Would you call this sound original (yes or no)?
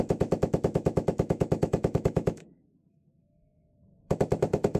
no